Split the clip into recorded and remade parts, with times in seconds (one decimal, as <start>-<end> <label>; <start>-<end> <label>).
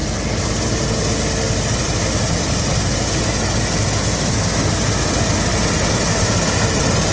0.0-7.1 recorded